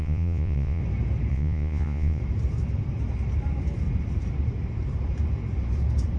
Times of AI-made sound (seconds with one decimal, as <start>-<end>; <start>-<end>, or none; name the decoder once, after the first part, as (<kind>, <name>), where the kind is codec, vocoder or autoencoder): 0.0-0.8 (vocoder, Vocos); 1.3-2.2